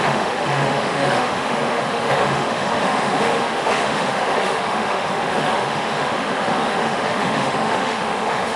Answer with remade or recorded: remade